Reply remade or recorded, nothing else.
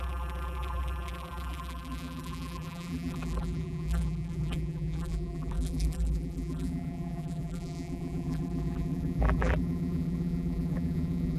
remade